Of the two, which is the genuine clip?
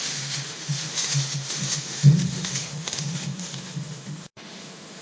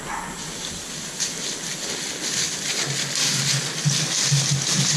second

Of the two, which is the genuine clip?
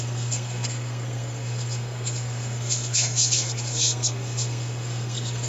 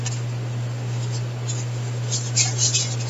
second